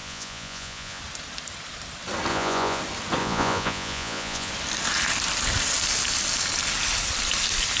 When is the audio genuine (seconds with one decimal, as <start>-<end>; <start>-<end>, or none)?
1.0-2.3; 2.8-3.2; 4.5-7.8